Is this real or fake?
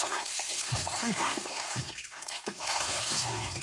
fake